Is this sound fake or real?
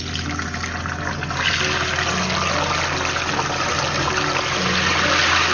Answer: real